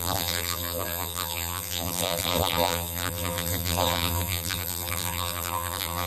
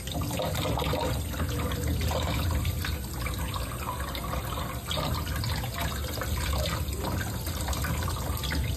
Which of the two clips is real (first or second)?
second